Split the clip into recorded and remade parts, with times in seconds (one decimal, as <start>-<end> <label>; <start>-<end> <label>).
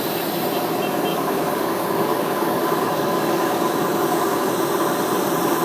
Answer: 0.0-1.1 recorded; 1.1-4.5 remade; 4.5-5.6 recorded